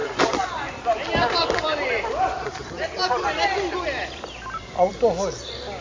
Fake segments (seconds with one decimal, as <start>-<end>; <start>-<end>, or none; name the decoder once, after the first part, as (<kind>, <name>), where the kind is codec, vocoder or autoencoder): 0.0-0.8 (vocoder, BigVGAN v2); 1.4-4.9